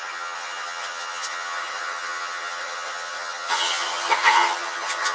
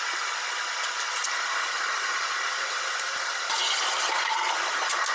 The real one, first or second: second